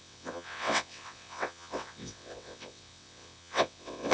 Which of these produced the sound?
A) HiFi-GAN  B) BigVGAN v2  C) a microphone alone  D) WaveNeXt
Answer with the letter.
D